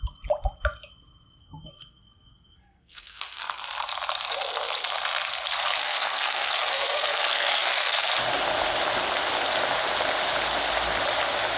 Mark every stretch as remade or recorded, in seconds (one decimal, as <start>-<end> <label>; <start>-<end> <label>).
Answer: 0.0-1.4 recorded; 1.4-3.6 remade; 3.6-5.8 recorded; 5.8-8.1 remade; 8.1-11.6 recorded